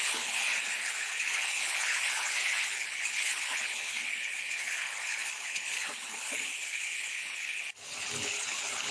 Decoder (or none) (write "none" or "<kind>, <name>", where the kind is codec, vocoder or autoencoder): codec, HILCodec